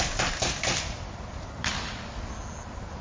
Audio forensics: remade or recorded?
recorded